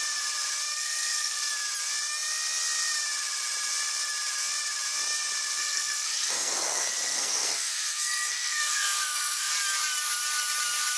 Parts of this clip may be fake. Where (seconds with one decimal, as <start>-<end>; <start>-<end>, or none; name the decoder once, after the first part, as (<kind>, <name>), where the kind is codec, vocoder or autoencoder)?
0.7-1.5 (codec, SNAC); 5.6-9.5